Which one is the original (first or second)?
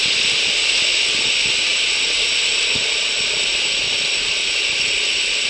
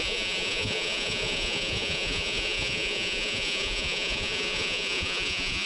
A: first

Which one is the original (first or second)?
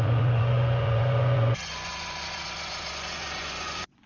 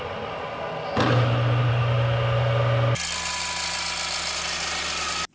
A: second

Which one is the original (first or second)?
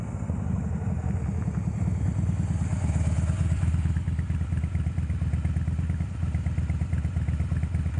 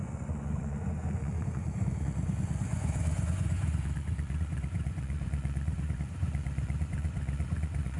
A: first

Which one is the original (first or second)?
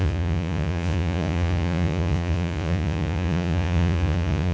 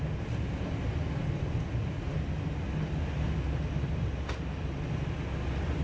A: second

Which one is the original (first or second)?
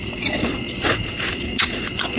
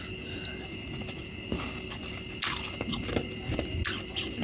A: second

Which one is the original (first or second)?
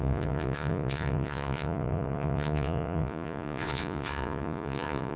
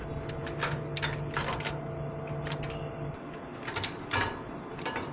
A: second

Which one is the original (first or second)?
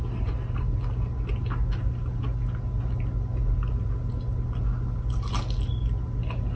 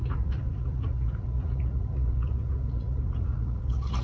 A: first